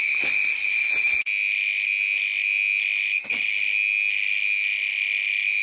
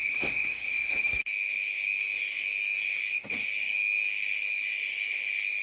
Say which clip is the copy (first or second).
second